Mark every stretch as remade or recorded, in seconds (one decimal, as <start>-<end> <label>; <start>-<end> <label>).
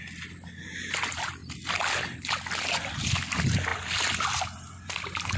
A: 0.0-1.4 remade; 1.4-2.2 recorded; 2.2-5.4 remade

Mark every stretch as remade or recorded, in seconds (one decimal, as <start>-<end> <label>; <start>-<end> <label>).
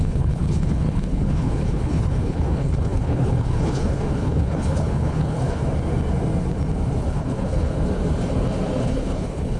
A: 0.0-5.6 remade; 5.6-7.1 recorded; 7.1-7.7 remade; 7.7-8.8 recorded; 8.8-9.6 remade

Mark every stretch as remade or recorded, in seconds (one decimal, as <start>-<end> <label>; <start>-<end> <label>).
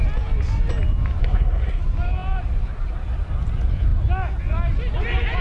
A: 0.0-1.2 recorded; 1.2-1.8 remade; 1.8-5.4 recorded